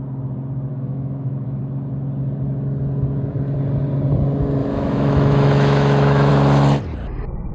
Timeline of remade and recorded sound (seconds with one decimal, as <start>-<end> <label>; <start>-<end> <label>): 0.0-0.7 recorded; 0.7-1.6 remade; 1.6-4.6 recorded; 4.6-6.3 remade; 6.3-7.5 recorded